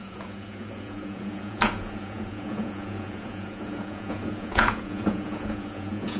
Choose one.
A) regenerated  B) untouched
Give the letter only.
A